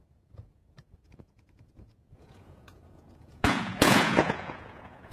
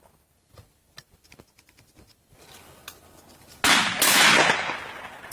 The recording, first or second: second